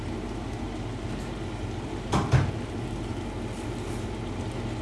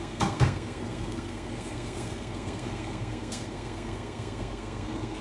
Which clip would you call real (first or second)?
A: first